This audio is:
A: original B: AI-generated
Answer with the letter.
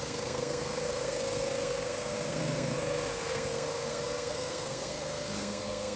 B